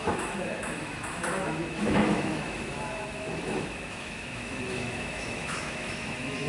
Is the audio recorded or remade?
remade